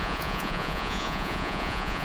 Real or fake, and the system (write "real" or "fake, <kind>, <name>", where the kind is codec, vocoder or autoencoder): fake, vocoder, Vocos